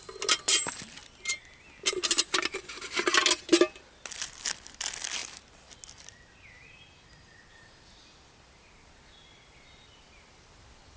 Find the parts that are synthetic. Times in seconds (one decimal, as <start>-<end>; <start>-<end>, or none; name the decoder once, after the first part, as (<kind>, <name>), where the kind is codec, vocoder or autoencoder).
none